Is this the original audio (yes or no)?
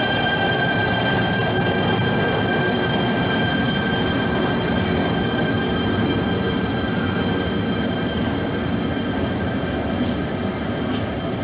yes